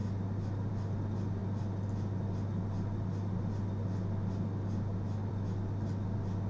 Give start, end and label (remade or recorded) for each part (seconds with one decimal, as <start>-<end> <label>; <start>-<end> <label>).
0.0-6.5 recorded